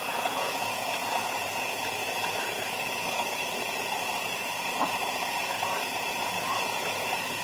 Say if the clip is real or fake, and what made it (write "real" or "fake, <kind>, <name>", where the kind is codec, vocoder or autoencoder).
fake, vocoder, Vocos